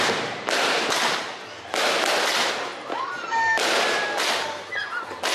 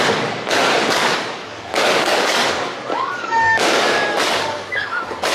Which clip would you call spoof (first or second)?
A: second